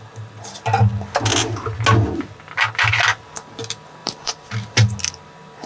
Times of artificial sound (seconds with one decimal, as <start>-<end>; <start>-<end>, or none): 4.0-5.0